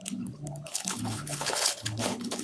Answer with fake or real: fake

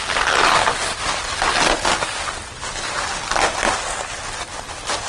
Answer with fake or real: real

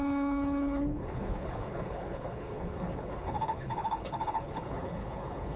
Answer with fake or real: fake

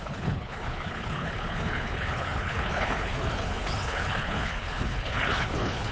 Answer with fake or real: fake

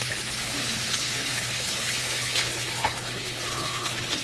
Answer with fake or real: fake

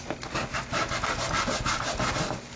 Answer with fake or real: real